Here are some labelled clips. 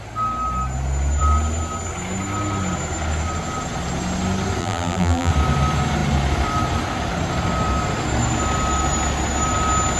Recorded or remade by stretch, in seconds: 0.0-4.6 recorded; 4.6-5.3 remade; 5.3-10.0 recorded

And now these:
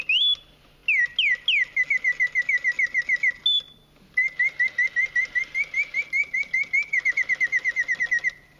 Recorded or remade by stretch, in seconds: 0.0-6.2 recorded; 6.2-7.0 remade; 7.0-8.6 recorded

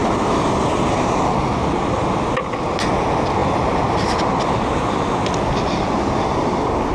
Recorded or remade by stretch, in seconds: 0.0-1.4 remade; 1.4-6.9 recorded

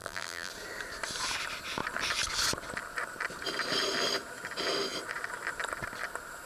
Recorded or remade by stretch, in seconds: 0.0-0.5 remade; 0.5-6.5 recorded

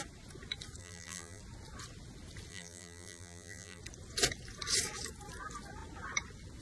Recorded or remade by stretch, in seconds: 0.0-0.8 recorded; 0.8-1.4 remade; 1.4-2.5 recorded; 2.5-3.8 remade; 3.8-6.6 recorded

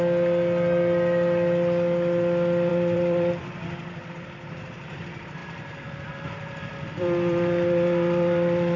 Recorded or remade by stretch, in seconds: 0.0-2.7 recorded; 2.7-4.1 remade; 4.1-5.4 recorded; 5.4-8.8 remade